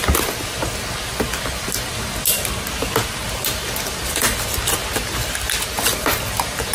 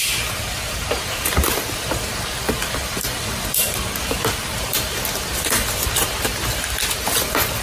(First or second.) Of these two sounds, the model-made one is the second